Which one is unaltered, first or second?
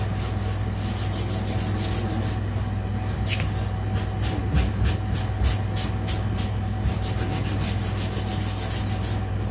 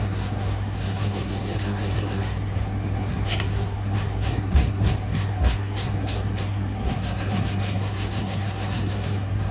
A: first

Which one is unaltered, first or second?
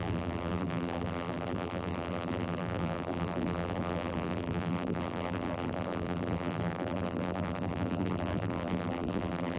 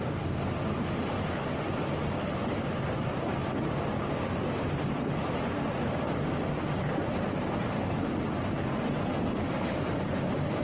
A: second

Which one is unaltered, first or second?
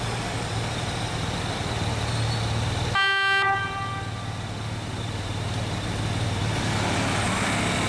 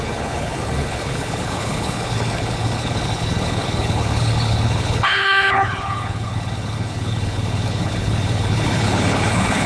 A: first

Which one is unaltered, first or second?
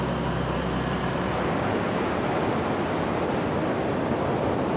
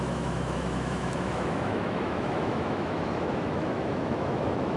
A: first